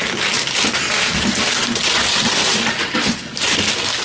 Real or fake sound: real